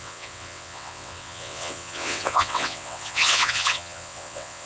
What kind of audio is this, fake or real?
fake